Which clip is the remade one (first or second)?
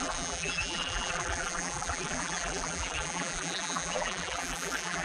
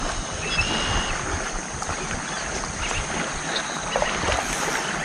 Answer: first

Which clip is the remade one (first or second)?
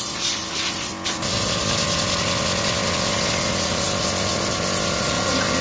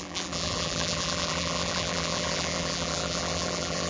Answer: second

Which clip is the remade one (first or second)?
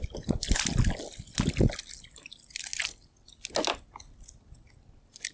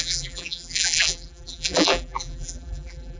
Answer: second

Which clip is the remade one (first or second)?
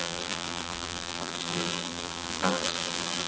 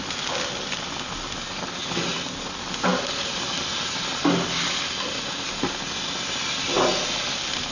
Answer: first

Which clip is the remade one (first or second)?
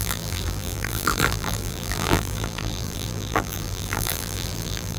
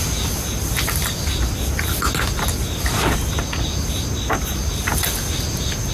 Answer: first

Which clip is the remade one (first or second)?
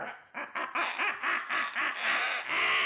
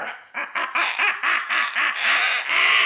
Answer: second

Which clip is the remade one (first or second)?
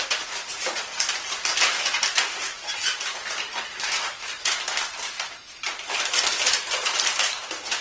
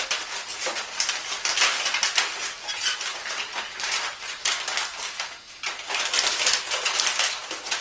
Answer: first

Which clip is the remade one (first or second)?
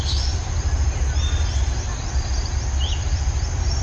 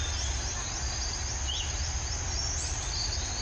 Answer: first